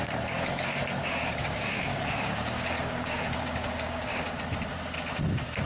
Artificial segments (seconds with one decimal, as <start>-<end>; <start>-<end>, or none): 1.0-4.4